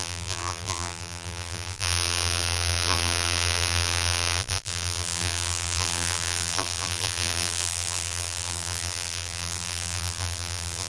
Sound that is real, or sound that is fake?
fake